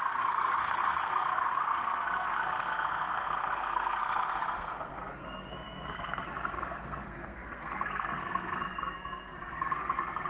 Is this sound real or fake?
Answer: fake